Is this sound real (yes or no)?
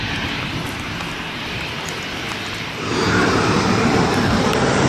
no